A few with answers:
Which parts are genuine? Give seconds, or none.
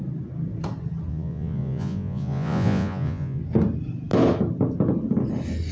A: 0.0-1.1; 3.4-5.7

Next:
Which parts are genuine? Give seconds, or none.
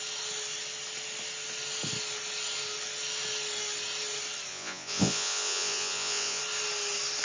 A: 0.0-4.5; 6.4-7.2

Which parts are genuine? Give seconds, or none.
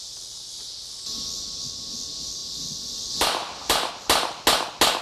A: 0.0-2.4; 3.9-5.0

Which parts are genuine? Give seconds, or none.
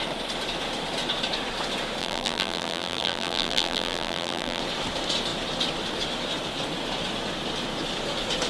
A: 0.0-2.0; 4.6-8.5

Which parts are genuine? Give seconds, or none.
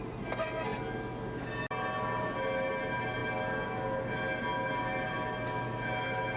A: 0.0-6.4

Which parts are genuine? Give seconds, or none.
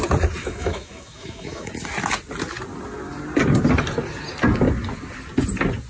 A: 0.0-0.4; 1.7-5.9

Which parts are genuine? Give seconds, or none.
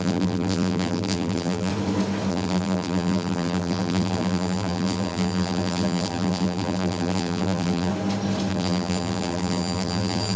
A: 1.7-2.3; 7.9-8.5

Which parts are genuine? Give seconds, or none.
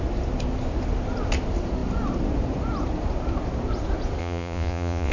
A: 0.0-4.2